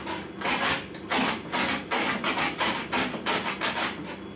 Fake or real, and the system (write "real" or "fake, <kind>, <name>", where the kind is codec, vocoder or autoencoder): real